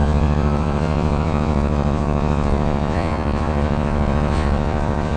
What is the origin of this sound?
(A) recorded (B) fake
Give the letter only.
B